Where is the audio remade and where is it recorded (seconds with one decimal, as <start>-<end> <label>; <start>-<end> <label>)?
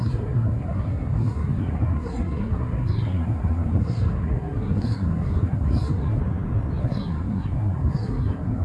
0.0-6.2 remade; 6.2-6.8 recorded; 6.8-8.6 remade